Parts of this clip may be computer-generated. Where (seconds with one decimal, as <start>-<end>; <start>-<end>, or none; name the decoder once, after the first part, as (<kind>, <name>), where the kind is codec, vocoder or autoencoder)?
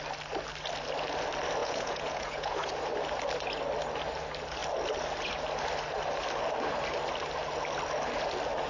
1.6-2.7 (vocoder, Vocos)